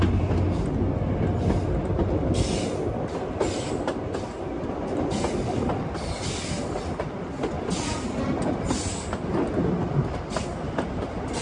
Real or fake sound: real